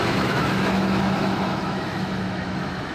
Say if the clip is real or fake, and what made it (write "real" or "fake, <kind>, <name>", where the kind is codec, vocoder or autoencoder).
fake, autoencoder, DAC-VAE